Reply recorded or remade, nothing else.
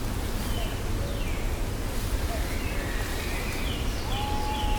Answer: recorded